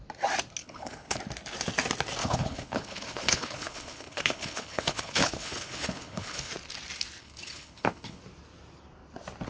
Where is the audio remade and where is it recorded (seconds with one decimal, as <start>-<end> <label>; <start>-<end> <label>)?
0.0-0.6 recorded; 0.6-1.2 remade; 1.2-2.2 recorded; 2.2-6.5 remade; 6.5-7.2 recorded; 7.2-8.2 remade; 8.2-9.5 recorded